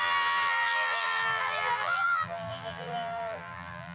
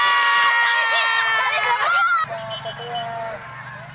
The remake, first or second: first